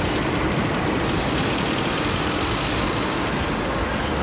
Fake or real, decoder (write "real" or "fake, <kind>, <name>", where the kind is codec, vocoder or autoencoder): real